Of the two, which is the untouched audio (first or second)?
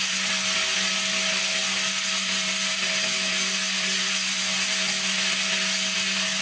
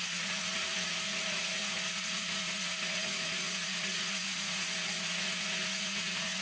first